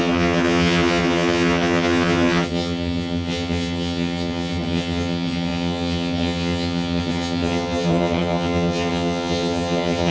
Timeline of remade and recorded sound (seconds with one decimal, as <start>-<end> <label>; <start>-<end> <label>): 0.0-10.1 remade